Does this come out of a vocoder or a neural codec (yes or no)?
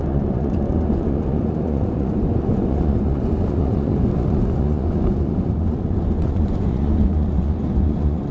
yes